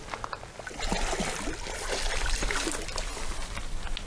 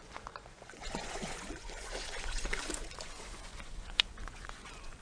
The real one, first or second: first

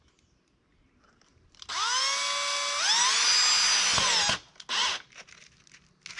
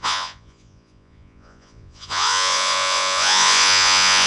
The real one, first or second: first